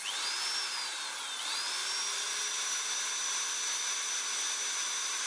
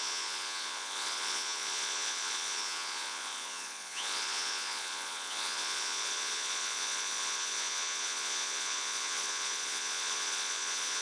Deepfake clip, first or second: second